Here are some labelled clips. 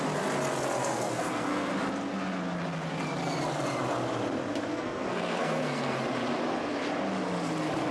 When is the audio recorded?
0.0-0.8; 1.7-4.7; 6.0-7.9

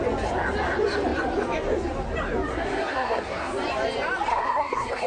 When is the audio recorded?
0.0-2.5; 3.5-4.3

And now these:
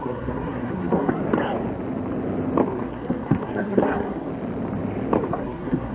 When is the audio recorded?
1.2-2.8; 4.3-5.3

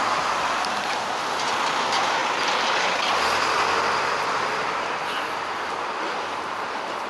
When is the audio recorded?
0.0-7.1

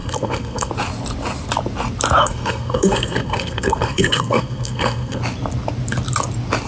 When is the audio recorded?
0.7-2.2; 5.2-6.7

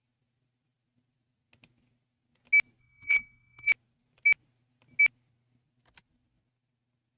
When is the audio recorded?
0.0-2.8; 3.7-7.2